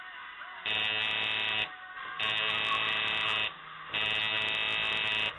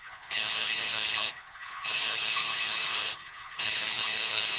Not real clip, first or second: second